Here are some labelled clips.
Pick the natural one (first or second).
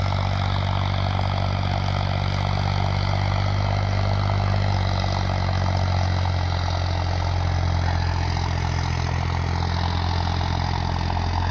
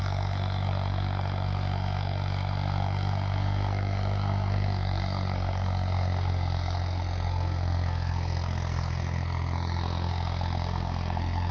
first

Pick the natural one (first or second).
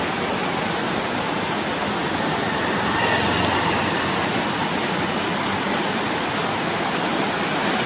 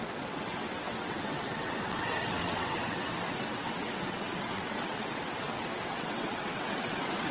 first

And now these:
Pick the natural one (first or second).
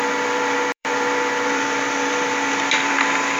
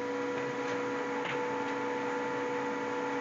second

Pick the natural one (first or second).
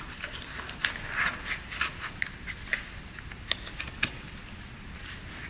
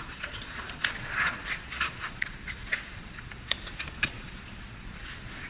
first